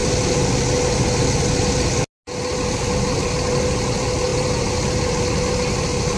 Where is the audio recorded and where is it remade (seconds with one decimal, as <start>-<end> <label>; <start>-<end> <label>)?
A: 0.0-6.2 recorded